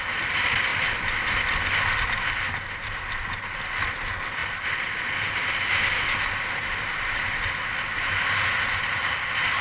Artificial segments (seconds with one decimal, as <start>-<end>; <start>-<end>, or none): none